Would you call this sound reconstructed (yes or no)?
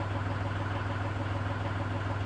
no